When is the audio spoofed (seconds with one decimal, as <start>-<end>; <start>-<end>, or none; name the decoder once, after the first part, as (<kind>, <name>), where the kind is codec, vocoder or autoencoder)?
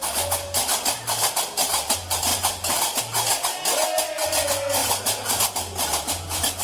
0.6-1.2 (vocoder, BigVGAN v2); 2.3-3.0; 4.8-5.4